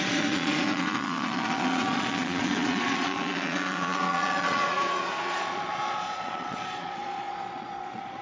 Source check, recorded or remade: remade